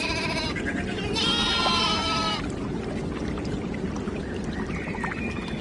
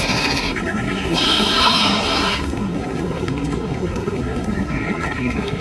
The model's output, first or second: second